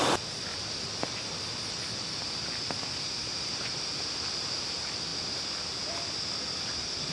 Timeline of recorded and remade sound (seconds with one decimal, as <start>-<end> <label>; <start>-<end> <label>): 0.0-7.1 recorded